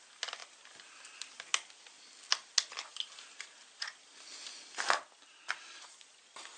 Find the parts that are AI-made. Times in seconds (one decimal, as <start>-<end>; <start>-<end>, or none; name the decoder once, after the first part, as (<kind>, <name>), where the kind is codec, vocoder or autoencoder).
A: none